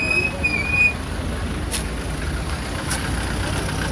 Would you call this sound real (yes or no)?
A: yes